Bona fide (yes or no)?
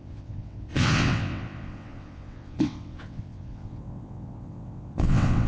no